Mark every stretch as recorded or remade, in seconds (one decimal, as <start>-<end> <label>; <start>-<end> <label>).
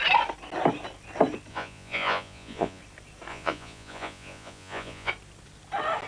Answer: 0.0-1.5 recorded; 1.5-2.8 remade; 2.8-3.3 recorded; 3.3-5.1 remade; 5.1-6.1 recorded